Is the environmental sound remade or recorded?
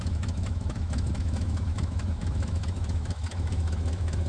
remade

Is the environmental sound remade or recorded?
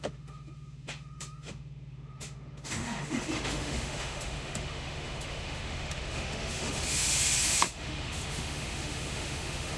remade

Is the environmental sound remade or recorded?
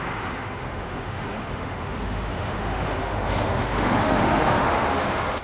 remade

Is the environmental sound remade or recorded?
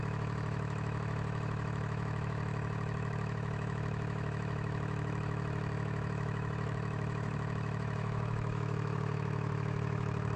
remade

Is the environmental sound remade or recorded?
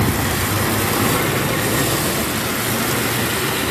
recorded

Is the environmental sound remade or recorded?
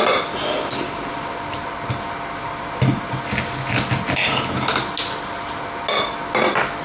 recorded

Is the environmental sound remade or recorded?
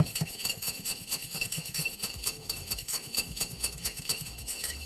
remade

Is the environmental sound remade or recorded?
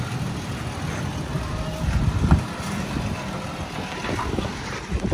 recorded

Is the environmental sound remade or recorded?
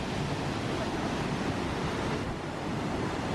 recorded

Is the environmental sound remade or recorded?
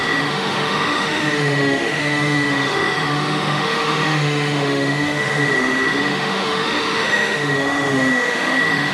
remade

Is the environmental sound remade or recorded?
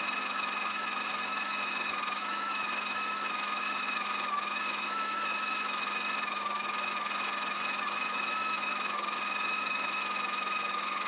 remade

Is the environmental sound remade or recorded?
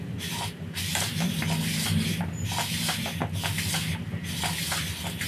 recorded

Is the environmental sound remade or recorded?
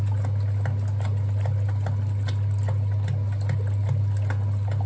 recorded